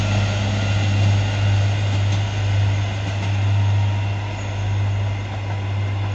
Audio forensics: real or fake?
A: real